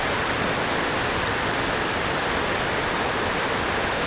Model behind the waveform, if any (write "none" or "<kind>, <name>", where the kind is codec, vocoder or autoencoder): none